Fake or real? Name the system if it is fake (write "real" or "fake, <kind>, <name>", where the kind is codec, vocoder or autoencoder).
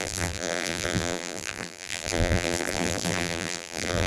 fake, vocoder, BigVGAN v2